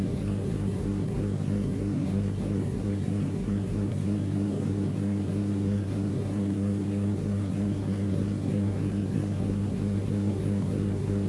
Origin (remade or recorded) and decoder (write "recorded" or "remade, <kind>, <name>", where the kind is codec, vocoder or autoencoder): remade, codec, SNAC